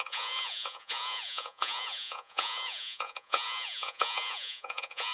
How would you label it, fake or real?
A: fake